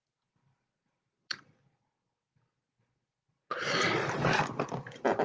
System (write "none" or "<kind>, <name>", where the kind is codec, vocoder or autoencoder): none